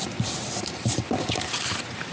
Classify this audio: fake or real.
real